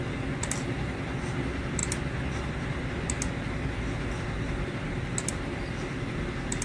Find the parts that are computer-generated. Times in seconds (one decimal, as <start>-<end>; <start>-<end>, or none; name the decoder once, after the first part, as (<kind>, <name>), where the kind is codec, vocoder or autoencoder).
none